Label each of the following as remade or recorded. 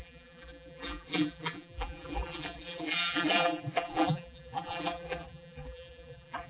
remade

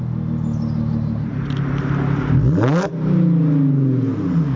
recorded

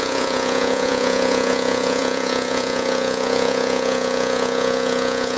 remade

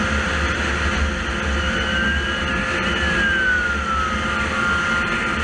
recorded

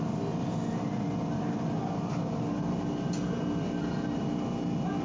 recorded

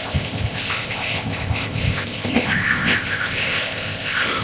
remade